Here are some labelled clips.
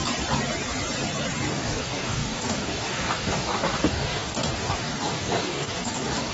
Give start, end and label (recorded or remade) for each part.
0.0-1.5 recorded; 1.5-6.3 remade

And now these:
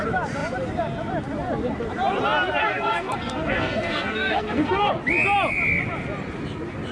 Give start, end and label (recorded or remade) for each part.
0.0-2.6 recorded; 2.6-4.9 remade; 4.9-6.9 recorded

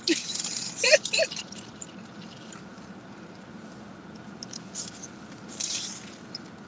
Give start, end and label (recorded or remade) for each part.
0.0-6.7 recorded